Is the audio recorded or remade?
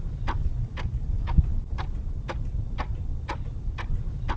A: recorded